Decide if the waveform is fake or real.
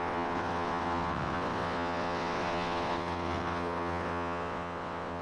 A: fake